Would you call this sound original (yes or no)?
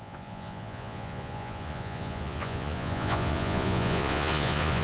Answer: no